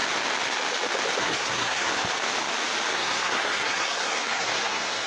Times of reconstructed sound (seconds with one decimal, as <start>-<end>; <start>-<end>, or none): 1.2-1.9; 2.9-5.1